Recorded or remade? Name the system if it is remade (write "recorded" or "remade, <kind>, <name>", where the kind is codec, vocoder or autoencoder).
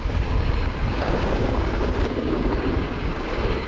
remade, codec, DAC